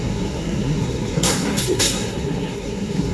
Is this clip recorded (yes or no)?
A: no